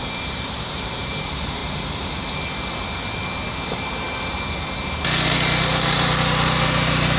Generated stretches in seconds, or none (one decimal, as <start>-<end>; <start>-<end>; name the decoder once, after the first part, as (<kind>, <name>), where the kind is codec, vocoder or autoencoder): 0.0-1.6 (vocoder, BigVGAN v2); 5.6-7.2